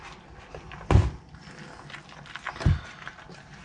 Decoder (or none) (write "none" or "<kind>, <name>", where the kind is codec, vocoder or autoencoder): none